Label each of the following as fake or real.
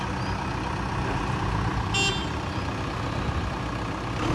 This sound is real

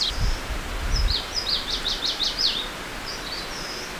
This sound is real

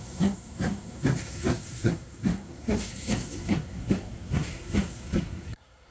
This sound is fake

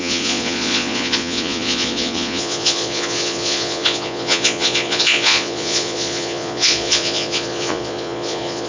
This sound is fake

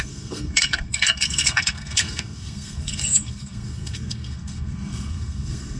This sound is fake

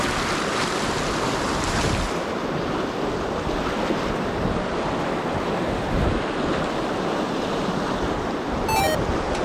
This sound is real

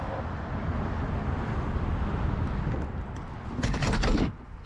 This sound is real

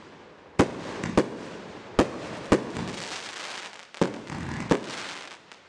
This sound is real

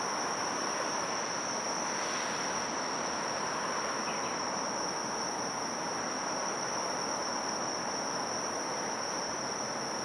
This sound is real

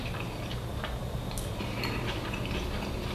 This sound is real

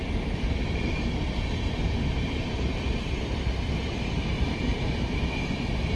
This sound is fake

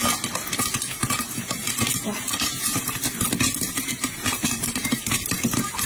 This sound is real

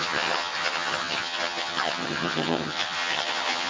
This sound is fake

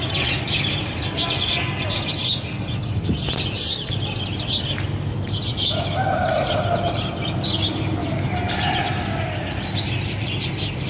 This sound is real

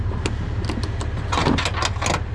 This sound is real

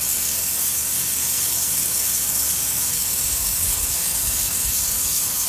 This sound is fake